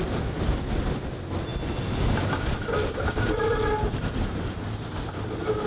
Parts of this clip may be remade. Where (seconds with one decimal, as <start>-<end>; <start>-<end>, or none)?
none